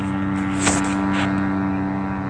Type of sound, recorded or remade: recorded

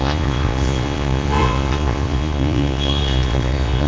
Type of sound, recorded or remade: remade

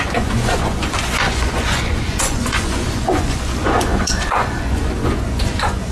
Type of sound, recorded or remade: remade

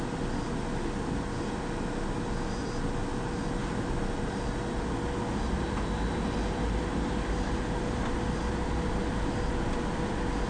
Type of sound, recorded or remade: recorded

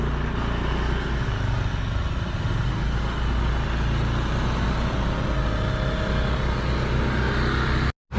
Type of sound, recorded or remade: recorded